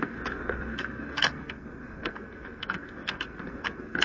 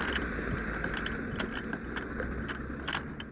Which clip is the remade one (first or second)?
first